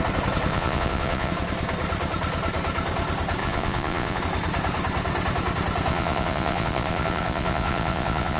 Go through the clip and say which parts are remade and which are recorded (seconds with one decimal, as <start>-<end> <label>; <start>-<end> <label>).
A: 0.0-0.5 recorded; 0.5-1.3 remade; 1.3-3.4 recorded; 3.4-4.2 remade; 4.2-5.9 recorded; 5.9-8.4 remade